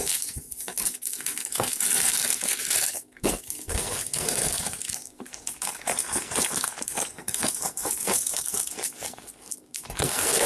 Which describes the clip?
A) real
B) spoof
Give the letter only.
B